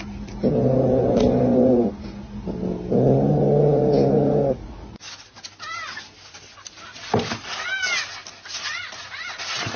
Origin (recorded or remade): recorded